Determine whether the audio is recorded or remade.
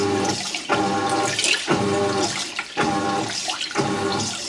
recorded